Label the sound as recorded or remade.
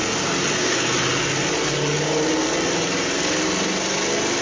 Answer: recorded